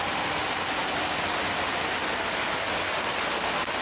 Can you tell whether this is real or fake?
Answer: real